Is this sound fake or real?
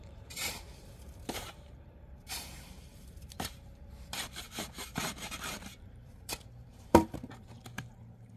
fake